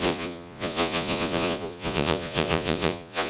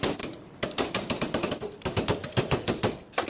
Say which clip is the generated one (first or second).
first